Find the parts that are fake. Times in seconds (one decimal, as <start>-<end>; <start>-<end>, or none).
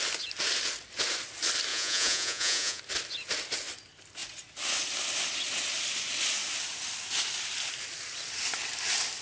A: 1.7-2.8